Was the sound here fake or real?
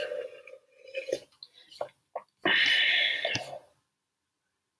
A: real